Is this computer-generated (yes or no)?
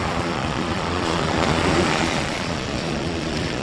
yes